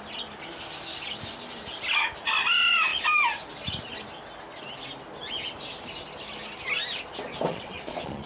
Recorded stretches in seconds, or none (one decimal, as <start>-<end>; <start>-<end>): 0.0-7.5